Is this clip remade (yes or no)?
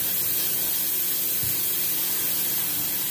no